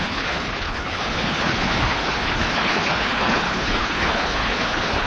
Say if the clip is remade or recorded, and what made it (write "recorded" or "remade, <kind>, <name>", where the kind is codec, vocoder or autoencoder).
remade, codec, HILCodec